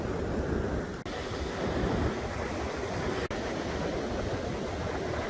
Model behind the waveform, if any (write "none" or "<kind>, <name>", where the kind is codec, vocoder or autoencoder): none